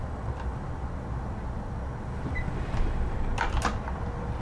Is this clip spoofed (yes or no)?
no